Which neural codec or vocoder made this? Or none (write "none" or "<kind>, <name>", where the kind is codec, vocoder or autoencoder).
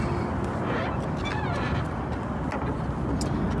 none